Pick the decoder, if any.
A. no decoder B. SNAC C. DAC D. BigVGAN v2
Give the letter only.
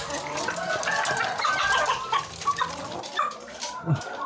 A